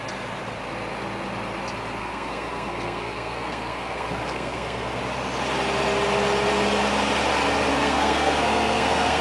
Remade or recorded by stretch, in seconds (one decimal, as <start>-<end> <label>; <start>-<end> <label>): 0.0-2.0 recorded; 2.0-5.0 remade; 5.0-7.7 recorded; 7.7-9.2 remade